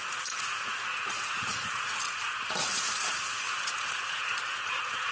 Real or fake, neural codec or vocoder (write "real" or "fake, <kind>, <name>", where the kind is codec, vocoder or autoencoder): fake, vocoder, Vocos